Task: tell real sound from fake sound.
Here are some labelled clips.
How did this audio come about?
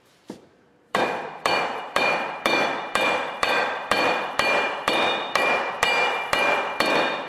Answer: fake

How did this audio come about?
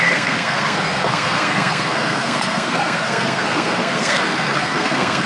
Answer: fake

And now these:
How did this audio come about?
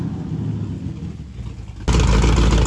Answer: real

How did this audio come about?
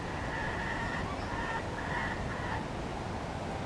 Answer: real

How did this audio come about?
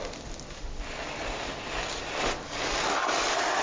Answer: real